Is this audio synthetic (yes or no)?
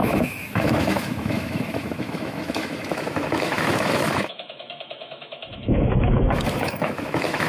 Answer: yes